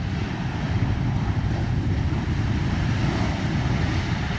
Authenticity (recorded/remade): recorded